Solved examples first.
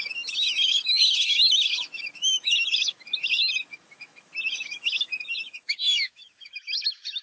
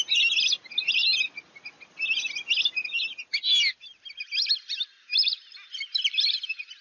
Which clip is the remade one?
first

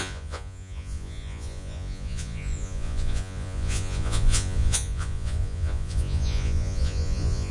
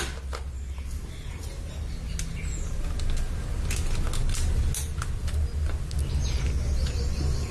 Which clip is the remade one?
first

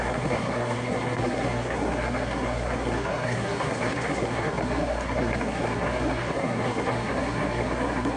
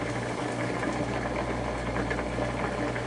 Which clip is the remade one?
first